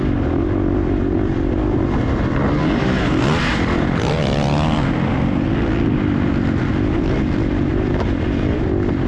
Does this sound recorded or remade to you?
recorded